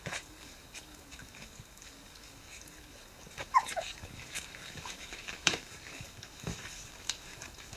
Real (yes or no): no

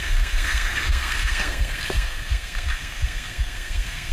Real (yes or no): no